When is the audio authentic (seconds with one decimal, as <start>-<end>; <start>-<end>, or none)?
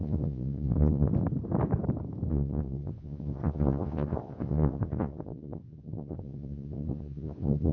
1.1-2.3